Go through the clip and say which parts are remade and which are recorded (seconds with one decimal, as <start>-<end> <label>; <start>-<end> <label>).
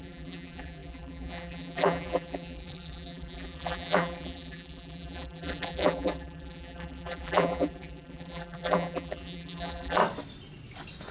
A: 0.0-10.0 remade; 10.0-11.1 recorded